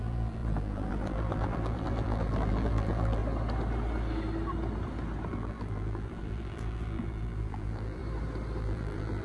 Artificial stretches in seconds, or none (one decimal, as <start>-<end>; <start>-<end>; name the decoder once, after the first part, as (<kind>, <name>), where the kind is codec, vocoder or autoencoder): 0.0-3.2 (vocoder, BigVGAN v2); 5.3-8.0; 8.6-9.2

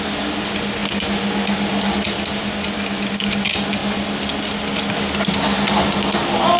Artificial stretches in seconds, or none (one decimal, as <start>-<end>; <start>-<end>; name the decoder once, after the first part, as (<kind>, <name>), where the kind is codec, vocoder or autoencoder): none

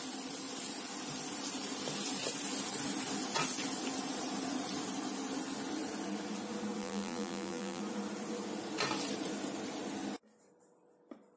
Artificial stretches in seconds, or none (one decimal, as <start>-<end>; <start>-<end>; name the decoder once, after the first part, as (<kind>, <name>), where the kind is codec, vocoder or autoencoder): 6.8-7.8 (vocoder, BigVGAN v2)